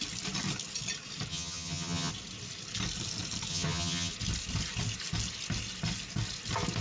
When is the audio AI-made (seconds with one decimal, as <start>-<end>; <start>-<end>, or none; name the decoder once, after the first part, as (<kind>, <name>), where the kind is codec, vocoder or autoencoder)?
1.3-2.1 (vocoder, HiFi-GAN); 3.5-4.1